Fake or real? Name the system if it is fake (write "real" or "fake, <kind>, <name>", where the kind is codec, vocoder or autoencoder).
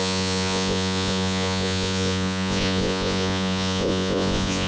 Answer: fake, vocoder, Vocos